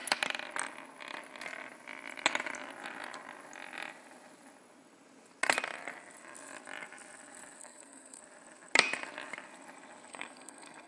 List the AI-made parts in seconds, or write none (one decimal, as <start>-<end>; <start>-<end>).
7.6-8.2; 10.1-10.9